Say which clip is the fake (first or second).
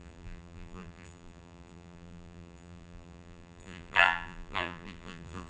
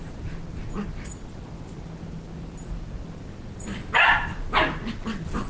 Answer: first